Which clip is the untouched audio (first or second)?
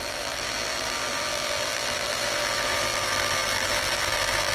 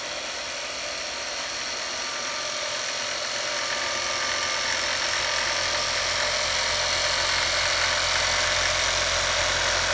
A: second